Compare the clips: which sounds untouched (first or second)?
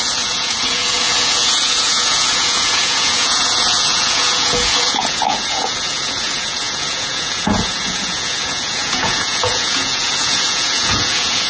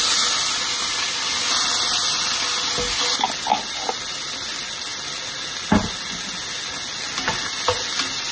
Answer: second